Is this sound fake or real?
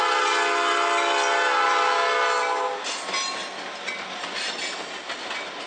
real